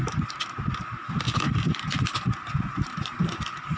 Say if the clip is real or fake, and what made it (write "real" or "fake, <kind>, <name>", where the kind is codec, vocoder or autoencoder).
real